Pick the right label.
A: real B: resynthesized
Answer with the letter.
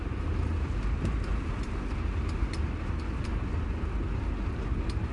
A